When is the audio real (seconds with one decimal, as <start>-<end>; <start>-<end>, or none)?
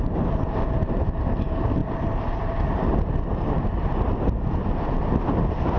0.0-1.8; 5.3-5.8